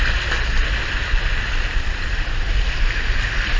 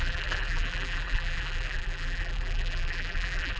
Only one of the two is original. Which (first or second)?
first